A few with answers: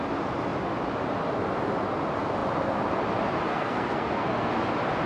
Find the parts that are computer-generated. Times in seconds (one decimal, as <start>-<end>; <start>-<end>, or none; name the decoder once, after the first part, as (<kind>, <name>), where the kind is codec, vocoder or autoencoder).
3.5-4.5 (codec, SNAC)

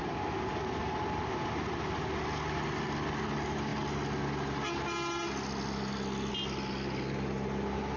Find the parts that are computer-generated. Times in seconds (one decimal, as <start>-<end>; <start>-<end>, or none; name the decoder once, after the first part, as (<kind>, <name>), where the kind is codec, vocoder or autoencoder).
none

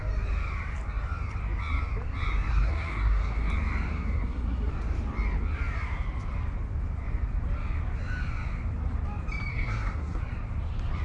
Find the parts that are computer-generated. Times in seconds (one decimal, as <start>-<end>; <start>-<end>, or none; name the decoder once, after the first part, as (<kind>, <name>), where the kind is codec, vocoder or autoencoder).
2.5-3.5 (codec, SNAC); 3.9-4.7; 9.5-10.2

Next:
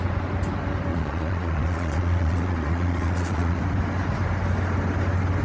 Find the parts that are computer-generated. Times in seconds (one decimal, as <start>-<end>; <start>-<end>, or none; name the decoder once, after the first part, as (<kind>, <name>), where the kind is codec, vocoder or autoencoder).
0.9-3.6 (vocoder, Vocos)